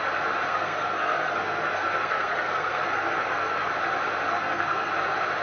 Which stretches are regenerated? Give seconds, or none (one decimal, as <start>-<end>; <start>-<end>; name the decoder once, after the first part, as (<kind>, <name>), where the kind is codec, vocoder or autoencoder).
0.5-3.7 (codec, SNAC); 4.3-4.9